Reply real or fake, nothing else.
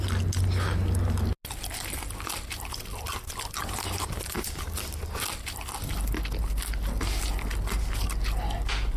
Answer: real